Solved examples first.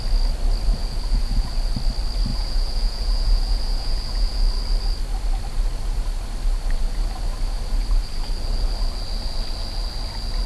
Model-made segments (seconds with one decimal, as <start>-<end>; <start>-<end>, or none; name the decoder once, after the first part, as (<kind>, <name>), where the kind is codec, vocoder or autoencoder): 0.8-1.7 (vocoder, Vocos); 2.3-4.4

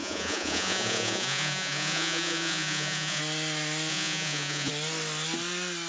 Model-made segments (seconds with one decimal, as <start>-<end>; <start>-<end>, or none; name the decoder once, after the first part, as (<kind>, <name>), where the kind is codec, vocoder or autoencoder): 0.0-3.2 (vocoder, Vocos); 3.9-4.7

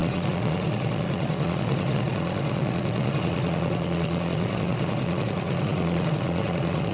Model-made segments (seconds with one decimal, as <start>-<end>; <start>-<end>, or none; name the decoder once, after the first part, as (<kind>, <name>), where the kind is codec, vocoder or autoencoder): 0.0-6.9 (vocoder, Vocos)

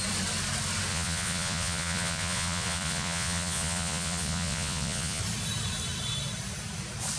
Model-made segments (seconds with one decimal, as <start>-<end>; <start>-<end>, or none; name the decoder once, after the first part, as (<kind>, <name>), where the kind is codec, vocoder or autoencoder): 0.9-5.2 (vocoder, Vocos)

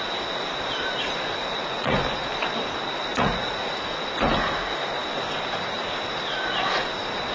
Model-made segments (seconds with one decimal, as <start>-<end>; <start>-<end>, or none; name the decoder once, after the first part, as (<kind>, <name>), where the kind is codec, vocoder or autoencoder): 1.4-2.0 (vocoder, Vocos); 3.1-3.7

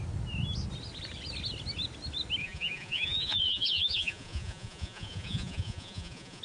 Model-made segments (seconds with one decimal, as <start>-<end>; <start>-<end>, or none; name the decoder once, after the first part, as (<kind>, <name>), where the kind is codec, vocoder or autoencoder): 2.4-6.4 (vocoder, Vocos)